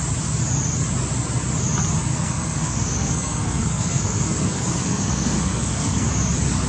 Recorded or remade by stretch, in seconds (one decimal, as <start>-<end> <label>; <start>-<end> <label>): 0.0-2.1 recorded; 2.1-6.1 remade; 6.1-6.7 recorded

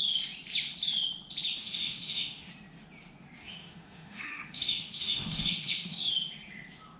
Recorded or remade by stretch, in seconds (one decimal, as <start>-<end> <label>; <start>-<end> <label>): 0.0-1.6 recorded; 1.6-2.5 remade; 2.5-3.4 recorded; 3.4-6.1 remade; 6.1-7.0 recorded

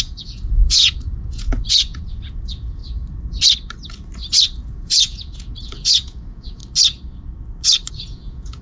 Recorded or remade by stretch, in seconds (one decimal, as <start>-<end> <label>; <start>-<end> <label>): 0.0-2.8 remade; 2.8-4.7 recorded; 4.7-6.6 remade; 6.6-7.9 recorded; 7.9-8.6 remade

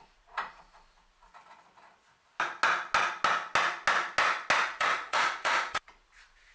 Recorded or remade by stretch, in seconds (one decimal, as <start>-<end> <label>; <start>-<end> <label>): 0.0-1.3 remade; 1.3-4.6 recorded; 4.6-6.5 remade

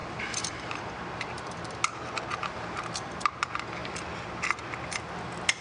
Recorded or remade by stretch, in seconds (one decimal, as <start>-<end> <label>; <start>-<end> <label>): 0.0-1.3 remade; 1.3-2.5 recorded; 2.5-3.4 remade; 3.4-5.6 recorded

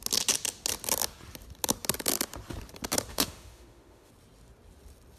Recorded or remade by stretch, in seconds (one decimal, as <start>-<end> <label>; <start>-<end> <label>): 0.0-3.1 recorded; 3.1-4.1 remade; 4.1-5.2 recorded

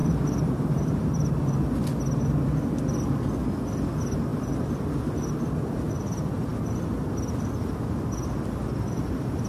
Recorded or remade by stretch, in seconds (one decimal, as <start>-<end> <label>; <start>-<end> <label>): 0.0-1.3 remade; 1.3-9.5 recorded